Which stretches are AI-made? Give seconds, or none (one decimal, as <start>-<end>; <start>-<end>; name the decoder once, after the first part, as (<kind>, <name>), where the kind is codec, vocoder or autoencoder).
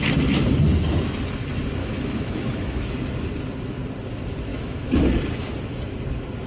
1.8-2.9 (autoencoder, DAC-VAE); 4.5-5.0